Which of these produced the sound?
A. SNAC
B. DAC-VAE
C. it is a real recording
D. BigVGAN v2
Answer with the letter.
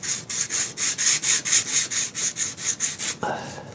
C